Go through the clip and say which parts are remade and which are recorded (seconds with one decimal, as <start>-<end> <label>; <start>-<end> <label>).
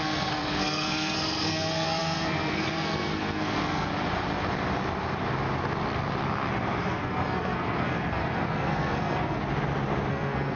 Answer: 0.0-3.9 remade; 3.9-6.8 recorded; 6.8-9.4 remade; 9.4-10.1 recorded; 10.1-10.6 remade